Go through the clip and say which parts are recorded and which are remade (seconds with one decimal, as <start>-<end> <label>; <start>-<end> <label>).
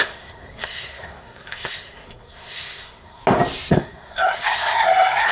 0.0-3.2 remade; 3.2-3.7 recorded; 3.7-5.3 remade